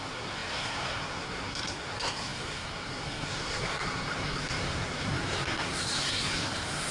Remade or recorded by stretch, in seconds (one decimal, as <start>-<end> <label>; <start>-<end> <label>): 0.0-6.9 remade